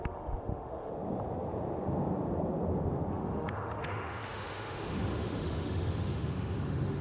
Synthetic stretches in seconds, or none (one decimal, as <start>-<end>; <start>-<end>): 0.0-0.9; 3.1-7.0